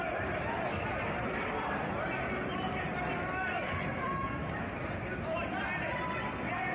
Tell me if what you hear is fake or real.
fake